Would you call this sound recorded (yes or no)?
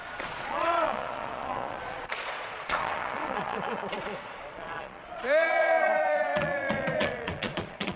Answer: no